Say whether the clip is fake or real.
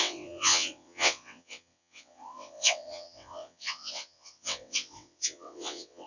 fake